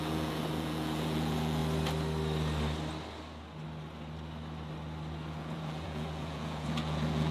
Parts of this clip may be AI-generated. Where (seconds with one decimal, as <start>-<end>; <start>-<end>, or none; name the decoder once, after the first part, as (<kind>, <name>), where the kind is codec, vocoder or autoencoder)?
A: 0.0-1.6 (vocoder, Vocos); 5.3-7.3